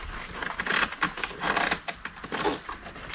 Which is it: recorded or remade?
recorded